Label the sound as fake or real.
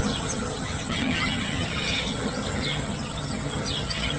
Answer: fake